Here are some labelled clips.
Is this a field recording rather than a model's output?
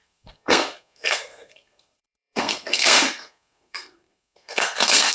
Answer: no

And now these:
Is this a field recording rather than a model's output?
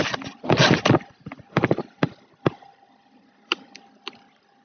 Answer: yes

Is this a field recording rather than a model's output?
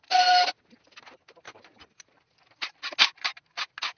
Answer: yes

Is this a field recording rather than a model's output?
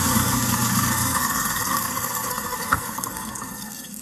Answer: no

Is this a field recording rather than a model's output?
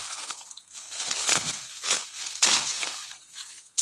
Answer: no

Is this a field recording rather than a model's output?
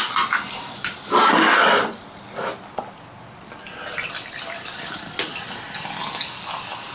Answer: yes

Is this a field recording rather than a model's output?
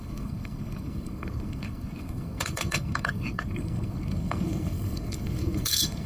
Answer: no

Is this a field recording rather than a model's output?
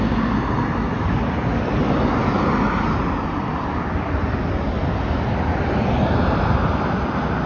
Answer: yes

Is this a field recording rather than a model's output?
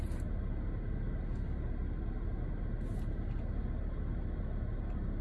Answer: yes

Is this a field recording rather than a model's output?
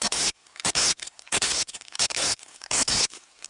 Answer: no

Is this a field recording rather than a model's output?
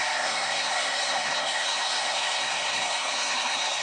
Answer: no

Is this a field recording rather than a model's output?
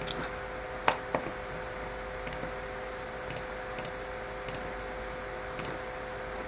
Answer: yes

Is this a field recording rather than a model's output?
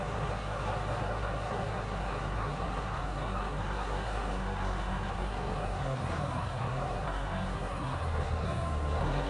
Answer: no